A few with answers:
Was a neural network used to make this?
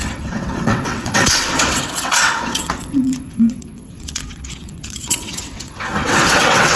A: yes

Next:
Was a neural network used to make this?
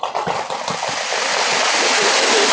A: no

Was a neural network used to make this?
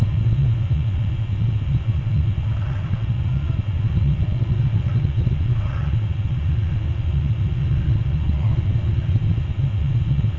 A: yes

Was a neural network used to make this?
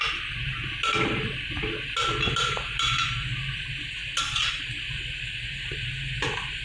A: no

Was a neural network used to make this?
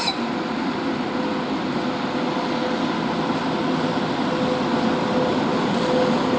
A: no